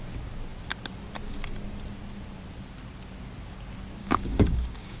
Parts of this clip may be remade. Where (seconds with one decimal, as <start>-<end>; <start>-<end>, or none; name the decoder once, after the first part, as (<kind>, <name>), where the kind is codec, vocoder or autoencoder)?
4.0-5.0 (codec, DAC)